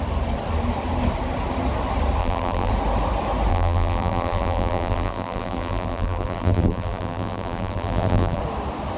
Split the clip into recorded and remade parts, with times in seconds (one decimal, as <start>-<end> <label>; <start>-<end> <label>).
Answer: 0.0-2.2 recorded; 2.2-2.7 remade; 2.7-3.5 recorded; 3.5-8.4 remade; 8.4-9.0 recorded